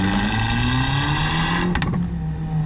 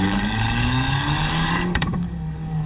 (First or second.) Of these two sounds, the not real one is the second